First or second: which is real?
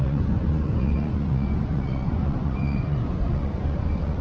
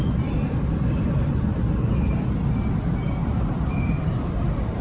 second